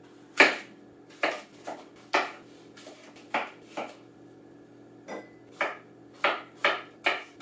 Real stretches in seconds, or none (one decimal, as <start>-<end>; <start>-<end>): 0.0-7.4